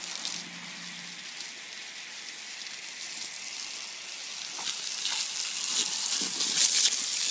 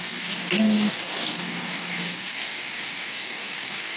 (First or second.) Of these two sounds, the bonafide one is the first